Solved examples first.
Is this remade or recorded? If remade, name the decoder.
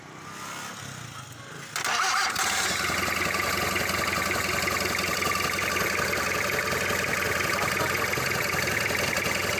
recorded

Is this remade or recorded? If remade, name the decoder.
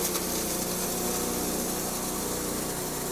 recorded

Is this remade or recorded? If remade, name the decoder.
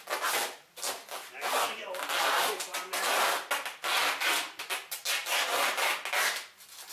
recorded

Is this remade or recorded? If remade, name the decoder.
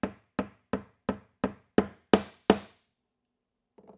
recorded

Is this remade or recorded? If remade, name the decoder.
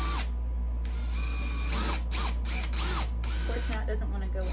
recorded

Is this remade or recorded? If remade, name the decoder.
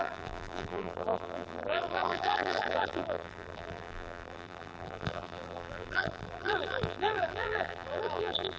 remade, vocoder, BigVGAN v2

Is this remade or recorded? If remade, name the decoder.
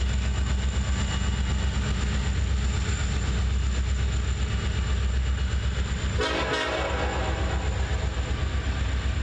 recorded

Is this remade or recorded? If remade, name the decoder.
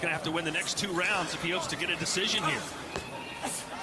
remade, vocoder, BigVGAN v2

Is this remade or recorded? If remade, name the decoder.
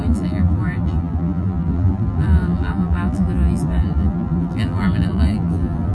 remade, vocoder, BigVGAN v2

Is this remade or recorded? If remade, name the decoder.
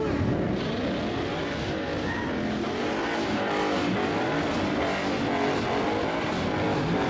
recorded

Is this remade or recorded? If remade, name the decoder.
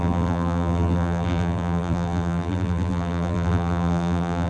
remade, vocoder, BigVGAN v2